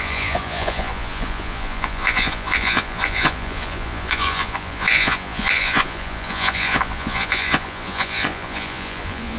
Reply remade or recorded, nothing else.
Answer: remade